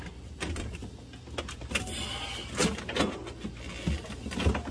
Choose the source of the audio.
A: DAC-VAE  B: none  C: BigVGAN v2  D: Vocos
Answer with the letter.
B